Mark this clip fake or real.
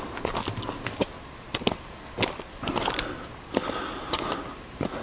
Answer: real